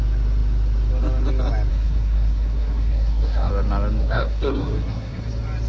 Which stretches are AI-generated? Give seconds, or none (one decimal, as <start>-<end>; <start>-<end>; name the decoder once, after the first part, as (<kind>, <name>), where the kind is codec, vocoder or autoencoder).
1.7-3.5 (codec, SNAC); 4.0-5.2

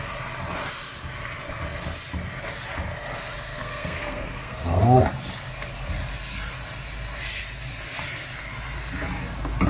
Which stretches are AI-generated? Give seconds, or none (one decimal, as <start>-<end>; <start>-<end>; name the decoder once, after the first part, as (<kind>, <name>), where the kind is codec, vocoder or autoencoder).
3.5-5.0 (codec, SNAC)

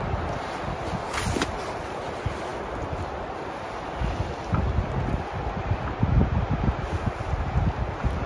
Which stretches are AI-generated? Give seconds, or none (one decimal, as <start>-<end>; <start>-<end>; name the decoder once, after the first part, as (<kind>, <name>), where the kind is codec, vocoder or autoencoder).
none

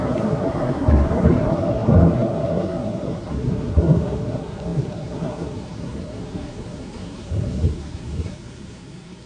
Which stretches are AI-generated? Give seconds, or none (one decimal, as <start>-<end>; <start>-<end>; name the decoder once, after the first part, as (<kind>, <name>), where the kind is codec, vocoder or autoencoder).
0.0-9.3 (codec, SNAC)

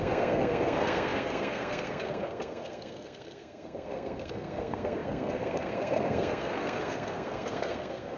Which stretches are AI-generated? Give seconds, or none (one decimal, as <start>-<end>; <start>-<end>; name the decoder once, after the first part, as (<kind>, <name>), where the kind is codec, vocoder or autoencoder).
0.0-8.2 (codec, SNAC)

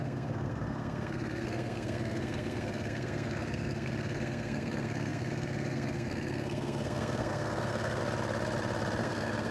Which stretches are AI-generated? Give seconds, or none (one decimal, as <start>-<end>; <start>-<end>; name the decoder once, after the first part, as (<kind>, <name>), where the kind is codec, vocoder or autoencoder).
0.0-8.0 (codec, SNAC); 9.0-9.5

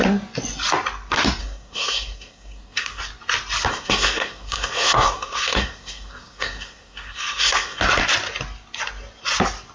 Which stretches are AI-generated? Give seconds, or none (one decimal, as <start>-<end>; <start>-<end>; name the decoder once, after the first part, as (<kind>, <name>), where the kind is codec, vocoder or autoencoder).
1.4-3.0 (codec, SNAC); 3.7-7.8

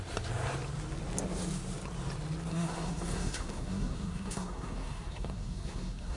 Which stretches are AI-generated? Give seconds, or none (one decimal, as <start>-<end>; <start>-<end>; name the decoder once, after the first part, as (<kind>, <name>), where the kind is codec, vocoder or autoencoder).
2.5-6.2 (codec, SNAC)